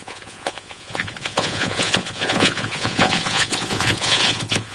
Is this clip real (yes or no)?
no